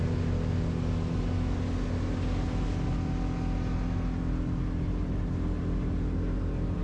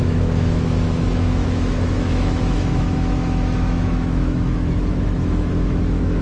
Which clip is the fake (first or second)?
second